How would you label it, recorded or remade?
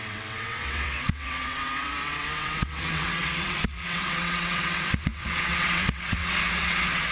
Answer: remade